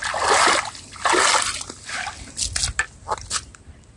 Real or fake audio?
real